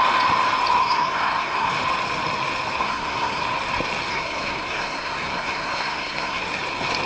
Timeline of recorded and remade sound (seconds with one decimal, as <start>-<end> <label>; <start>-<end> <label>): 0.0-0.8 recorded; 0.8-1.7 remade; 1.7-2.8 recorded; 2.8-3.4 remade; 3.4-4.1 recorded; 4.1-6.4 remade; 6.4-7.1 recorded